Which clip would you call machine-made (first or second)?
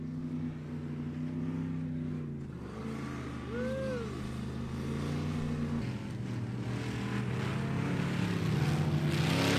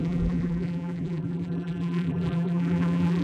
second